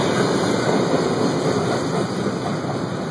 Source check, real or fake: real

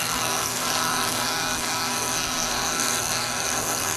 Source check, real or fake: fake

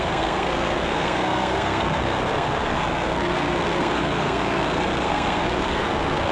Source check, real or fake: fake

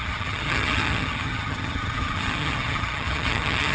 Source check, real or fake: fake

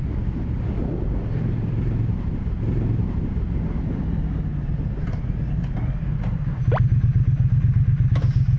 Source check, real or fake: real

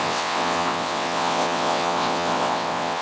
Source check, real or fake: fake